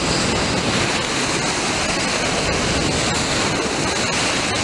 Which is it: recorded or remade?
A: recorded